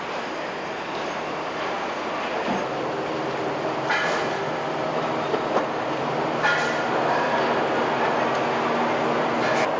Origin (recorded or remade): recorded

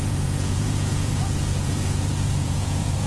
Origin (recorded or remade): remade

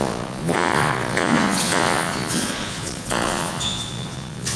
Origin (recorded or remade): remade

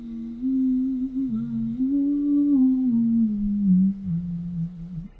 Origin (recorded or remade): recorded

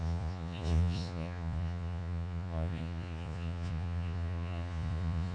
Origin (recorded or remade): remade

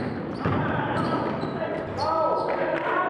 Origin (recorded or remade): recorded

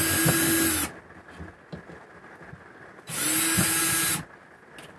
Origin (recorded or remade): recorded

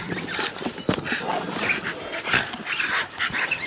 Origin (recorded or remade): recorded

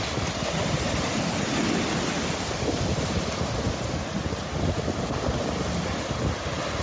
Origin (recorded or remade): recorded